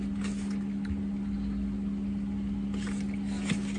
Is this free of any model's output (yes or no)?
yes